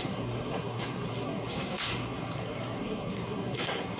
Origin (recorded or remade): remade